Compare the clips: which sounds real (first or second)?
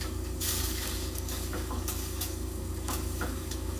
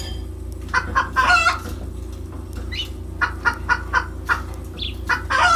second